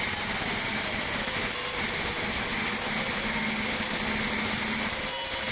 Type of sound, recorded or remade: recorded